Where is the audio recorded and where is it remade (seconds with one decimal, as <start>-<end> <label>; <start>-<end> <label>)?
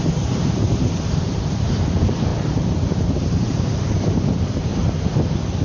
0.0-4.7 remade; 4.7-5.6 recorded